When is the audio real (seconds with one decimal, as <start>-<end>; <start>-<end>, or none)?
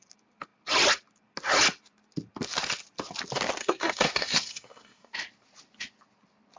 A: 0.0-3.6; 5.1-6.6